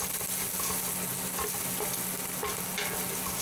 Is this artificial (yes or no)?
no